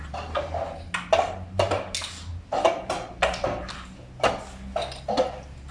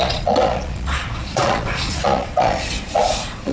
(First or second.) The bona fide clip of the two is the first